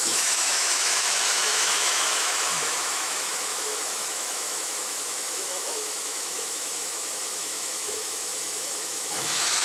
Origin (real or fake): fake